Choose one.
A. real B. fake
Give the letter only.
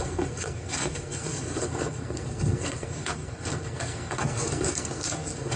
B